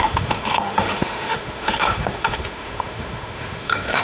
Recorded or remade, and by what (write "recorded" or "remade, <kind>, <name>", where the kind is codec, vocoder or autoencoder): remade, autoencoder, DAC-VAE